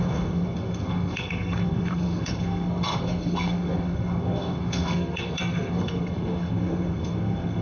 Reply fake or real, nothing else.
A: fake